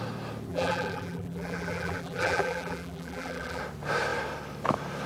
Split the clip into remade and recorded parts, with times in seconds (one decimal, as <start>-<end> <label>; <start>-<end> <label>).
0.0-0.5 recorded; 0.5-3.6 remade; 3.6-5.1 recorded